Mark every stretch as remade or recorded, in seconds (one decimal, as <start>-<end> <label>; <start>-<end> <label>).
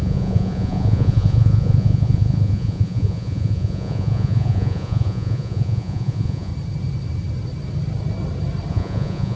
0.0-6.5 remade; 6.5-8.7 recorded; 8.7-9.4 remade